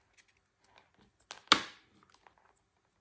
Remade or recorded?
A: recorded